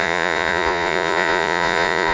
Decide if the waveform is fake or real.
fake